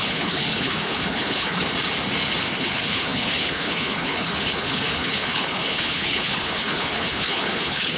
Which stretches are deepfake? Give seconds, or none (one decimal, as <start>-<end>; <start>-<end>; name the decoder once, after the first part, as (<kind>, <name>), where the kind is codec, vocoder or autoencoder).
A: 0.0-1.6 (codec, HILCodec); 2.6-8.0